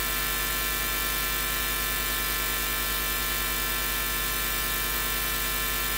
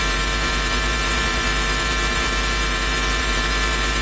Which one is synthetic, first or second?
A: second